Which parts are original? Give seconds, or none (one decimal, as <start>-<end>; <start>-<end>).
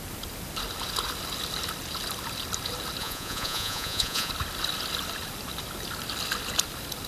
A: 0.0-3.0; 4.3-7.1